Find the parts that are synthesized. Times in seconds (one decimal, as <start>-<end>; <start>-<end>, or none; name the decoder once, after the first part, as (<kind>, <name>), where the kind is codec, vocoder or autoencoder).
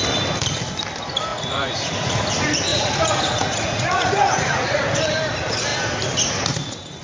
1.3-2.2 (vocoder, Vocos); 2.7-4.8